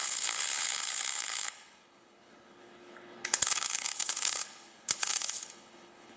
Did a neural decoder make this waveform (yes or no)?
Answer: yes